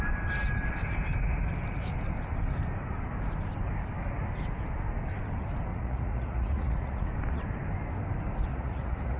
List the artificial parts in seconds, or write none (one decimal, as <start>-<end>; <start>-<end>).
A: 5.7-7.1; 8.5-9.2